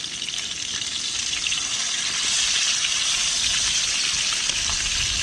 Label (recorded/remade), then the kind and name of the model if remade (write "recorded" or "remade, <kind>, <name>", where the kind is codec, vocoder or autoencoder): recorded